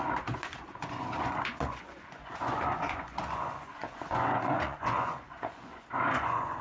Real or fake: fake